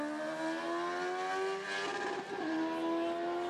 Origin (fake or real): real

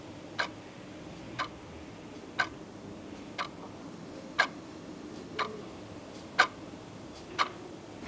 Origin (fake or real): real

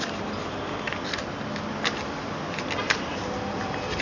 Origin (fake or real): real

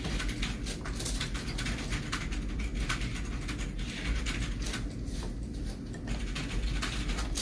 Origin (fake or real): real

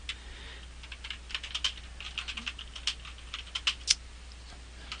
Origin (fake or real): real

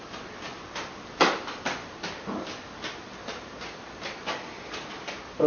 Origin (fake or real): real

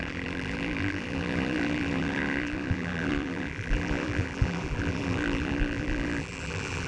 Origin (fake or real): fake